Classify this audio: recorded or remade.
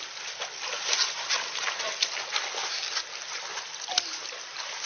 recorded